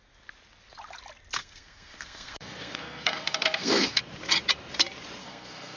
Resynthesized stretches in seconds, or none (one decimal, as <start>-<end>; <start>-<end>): 1.4-4.0; 5.2-5.8